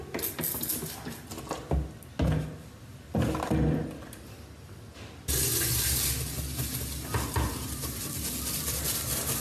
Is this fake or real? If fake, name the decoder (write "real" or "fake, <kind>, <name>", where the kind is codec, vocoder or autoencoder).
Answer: real